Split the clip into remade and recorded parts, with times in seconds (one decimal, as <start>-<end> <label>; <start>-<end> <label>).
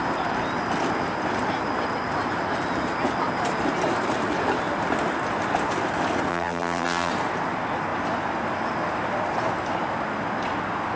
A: 0.0-6.3 recorded; 6.3-7.1 remade; 7.1-11.0 recorded